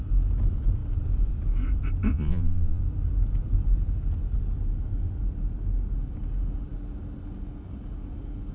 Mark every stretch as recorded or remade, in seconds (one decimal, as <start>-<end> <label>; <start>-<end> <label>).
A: 0.0-2.1 recorded; 2.1-2.8 remade; 2.8-8.5 recorded